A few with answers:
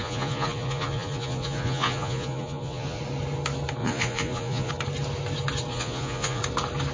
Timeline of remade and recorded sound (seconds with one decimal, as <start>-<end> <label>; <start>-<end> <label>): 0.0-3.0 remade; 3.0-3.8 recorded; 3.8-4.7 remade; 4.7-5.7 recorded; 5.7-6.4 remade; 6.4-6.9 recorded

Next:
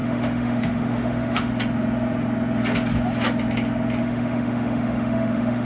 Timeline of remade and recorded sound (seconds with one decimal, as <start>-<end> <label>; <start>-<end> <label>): 0.0-1.5 remade; 1.5-4.0 recorded; 4.0-5.6 remade

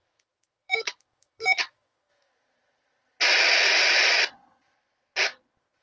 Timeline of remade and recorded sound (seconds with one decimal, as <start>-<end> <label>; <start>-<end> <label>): 0.0-2.3 remade; 2.3-5.8 recorded